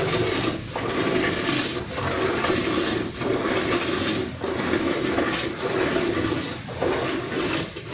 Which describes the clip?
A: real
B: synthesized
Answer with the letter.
A